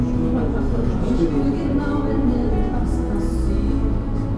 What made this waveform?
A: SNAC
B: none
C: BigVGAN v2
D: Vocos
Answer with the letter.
B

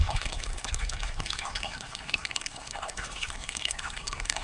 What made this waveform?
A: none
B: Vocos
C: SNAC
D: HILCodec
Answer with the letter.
C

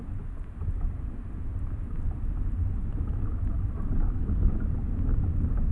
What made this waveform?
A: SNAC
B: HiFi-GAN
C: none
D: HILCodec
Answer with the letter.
C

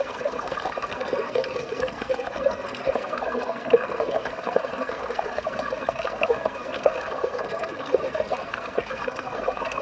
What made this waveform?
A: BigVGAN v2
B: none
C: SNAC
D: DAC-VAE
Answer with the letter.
C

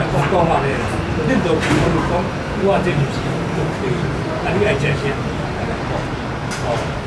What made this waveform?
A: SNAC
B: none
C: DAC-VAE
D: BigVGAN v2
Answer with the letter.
B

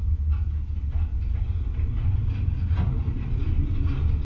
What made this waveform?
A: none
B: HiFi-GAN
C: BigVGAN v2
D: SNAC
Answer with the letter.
A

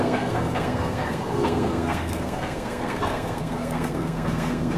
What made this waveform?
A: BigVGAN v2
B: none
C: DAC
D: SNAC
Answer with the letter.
D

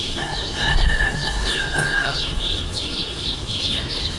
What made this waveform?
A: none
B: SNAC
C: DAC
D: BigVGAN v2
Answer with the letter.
B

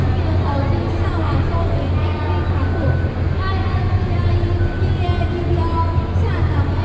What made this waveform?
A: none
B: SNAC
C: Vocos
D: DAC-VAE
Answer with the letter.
A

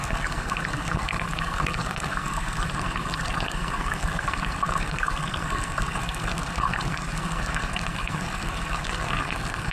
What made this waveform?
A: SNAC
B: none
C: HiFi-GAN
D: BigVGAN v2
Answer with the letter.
A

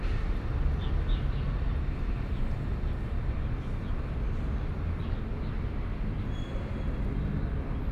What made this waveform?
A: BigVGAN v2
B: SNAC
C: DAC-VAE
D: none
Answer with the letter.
D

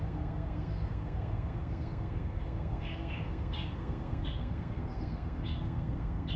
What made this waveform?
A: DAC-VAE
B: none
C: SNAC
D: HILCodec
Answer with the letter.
C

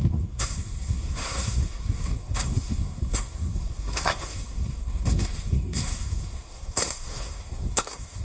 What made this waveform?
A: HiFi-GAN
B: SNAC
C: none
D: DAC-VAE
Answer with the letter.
B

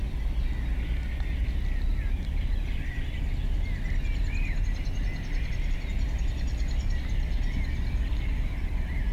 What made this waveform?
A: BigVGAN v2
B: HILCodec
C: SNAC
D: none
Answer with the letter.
D